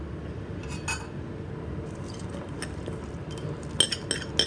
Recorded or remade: recorded